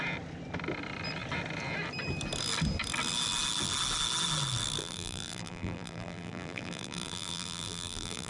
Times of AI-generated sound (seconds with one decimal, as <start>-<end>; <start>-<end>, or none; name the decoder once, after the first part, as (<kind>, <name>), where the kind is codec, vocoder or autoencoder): 4.8-8.3 (vocoder, BigVGAN v2)